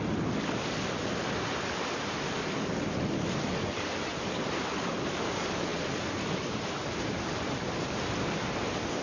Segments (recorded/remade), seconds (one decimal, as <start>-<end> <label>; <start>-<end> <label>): 0.0-1.0 recorded; 1.0-2.0 remade; 2.0-4.1 recorded; 4.1-5.3 remade; 5.3-5.7 recorded; 5.7-8.2 remade; 8.2-9.0 recorded